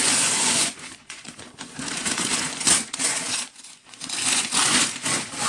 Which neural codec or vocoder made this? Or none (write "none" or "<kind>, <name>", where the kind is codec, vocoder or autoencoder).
vocoder, Vocos